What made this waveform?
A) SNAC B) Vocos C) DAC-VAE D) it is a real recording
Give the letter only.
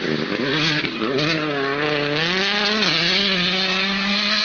D